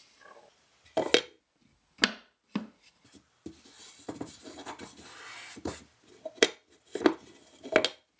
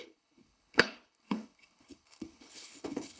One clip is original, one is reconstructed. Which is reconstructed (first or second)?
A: second